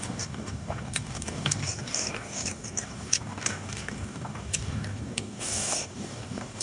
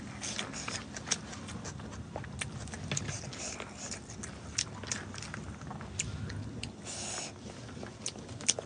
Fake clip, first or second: first